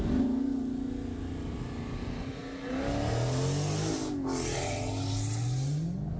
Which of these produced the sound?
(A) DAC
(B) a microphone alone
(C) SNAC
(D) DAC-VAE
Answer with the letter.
B